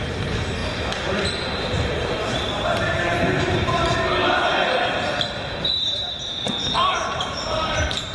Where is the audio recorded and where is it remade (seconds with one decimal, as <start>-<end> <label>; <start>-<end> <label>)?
0.0-4.2 remade; 4.2-4.9 recorded; 4.9-8.1 remade